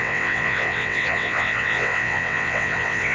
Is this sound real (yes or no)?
no